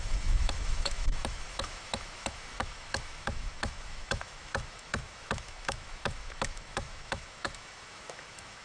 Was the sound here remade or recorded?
remade